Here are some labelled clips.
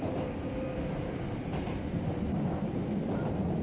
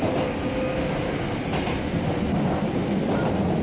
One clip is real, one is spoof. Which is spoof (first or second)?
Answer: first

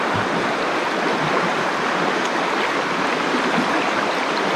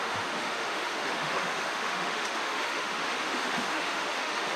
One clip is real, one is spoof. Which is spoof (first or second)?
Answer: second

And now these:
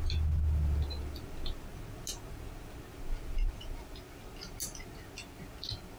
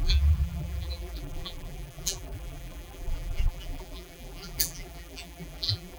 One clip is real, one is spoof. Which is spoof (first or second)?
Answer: second